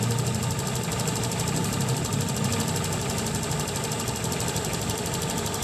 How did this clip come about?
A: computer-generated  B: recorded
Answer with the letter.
B